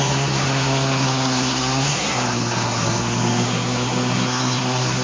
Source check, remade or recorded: remade